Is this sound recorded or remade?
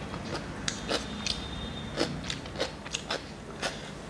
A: recorded